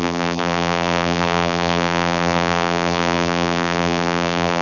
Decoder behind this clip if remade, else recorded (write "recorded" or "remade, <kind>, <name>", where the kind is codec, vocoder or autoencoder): remade, vocoder, BigVGAN v2